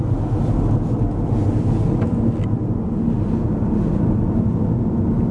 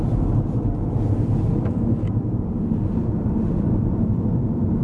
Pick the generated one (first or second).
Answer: second